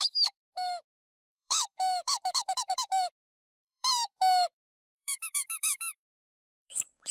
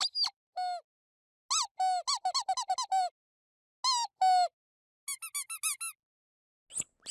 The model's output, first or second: first